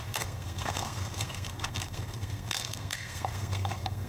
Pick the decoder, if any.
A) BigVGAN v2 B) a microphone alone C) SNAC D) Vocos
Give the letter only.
C